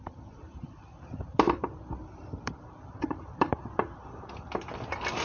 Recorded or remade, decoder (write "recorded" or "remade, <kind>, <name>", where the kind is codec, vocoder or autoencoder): remade, vocoder, BigVGAN v2